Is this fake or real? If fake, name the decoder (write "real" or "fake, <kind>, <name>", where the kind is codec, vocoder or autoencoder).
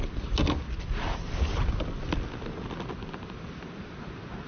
real